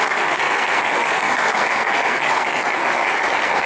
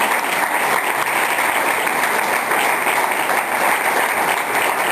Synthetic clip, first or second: first